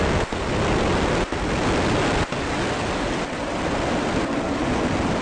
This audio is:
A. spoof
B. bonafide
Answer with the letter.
B